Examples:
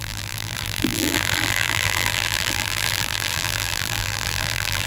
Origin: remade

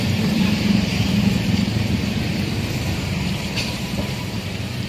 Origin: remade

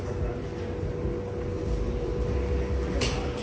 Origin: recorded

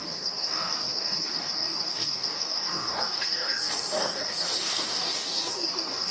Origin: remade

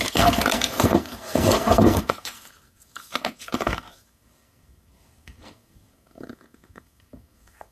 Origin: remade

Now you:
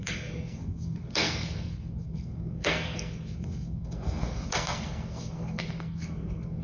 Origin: remade